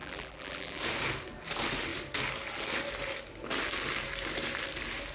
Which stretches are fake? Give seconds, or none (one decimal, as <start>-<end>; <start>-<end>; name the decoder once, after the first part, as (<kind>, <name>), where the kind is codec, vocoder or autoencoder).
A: 0.0-0.8 (vocoder, BigVGAN v2)